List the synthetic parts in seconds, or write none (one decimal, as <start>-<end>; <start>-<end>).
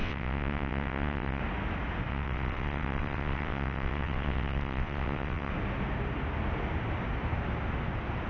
0.0-1.4; 2.1-5.5